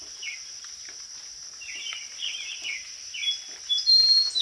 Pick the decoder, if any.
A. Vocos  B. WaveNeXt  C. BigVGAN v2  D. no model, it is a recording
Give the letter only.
D